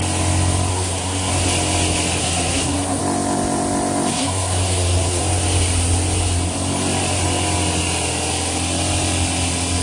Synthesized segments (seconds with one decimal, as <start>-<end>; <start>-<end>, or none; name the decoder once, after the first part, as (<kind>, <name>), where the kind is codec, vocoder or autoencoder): 0.7-1.3 (codec, SNAC); 2.2-3.0; 4.1-5.2